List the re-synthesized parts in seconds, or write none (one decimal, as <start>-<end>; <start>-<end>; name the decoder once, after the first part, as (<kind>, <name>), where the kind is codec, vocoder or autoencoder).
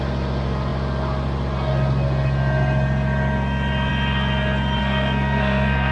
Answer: 4.8-5.9 (codec, SNAC)